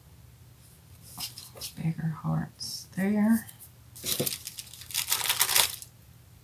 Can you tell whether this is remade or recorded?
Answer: recorded